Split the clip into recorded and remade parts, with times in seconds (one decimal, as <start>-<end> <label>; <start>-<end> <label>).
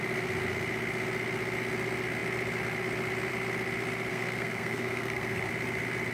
0.0-4.1 recorded; 4.1-5.5 remade; 5.5-6.1 recorded